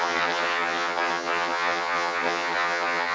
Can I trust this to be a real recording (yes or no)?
no